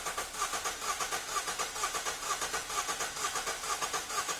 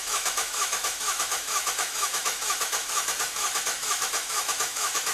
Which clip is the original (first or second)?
first